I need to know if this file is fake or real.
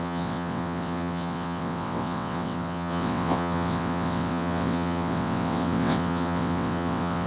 fake